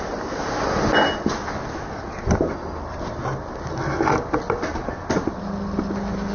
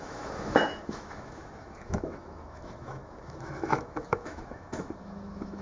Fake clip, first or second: second